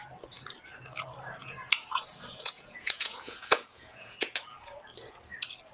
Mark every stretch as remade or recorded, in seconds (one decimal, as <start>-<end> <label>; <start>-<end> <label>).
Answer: 0.0-1.4 recorded; 1.4-4.8 remade; 4.8-5.7 recorded